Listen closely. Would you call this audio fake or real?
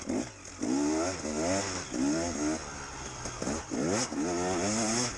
real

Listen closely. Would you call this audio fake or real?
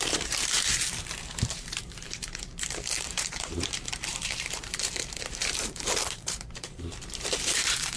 fake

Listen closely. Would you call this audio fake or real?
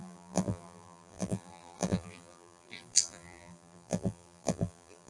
fake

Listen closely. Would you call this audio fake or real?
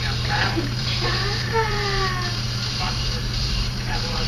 fake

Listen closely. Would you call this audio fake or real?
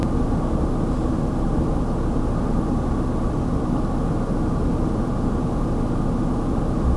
real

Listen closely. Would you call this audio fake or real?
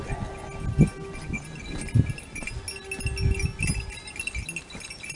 real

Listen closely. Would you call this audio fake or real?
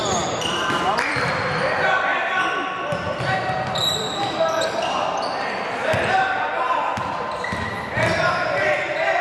fake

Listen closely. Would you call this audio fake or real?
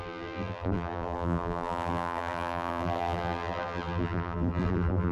fake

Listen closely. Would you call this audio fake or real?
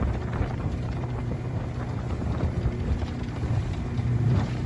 fake